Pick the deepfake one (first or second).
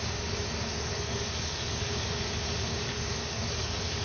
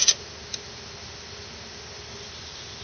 first